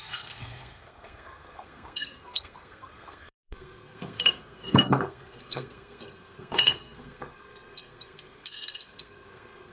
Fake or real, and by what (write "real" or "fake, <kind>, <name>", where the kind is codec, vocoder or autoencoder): fake, codec, SNAC